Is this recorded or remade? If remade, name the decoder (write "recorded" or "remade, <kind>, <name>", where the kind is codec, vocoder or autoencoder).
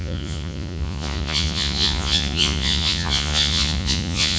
remade, vocoder, Vocos